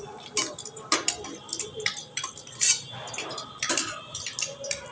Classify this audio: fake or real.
real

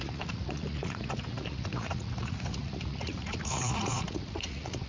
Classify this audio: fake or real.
fake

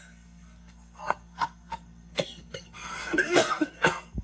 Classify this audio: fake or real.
fake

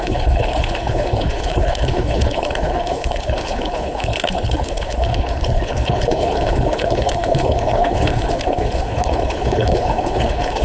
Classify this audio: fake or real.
fake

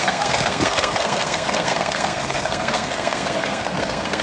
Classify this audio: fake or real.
fake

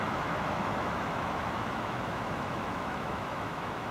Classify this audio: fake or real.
fake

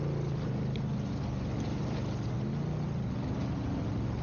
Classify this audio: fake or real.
real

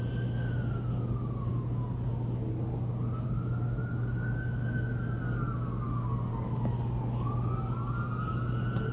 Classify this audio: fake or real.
real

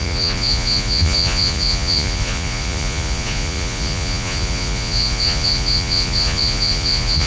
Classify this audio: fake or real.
fake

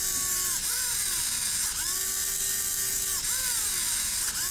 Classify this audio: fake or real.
real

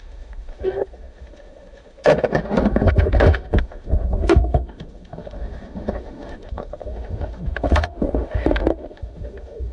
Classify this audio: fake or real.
fake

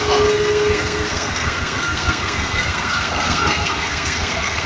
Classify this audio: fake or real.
fake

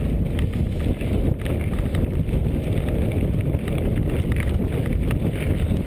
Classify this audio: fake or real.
real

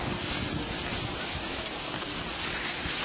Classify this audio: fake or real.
real